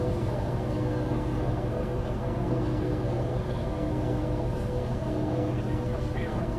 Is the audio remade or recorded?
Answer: remade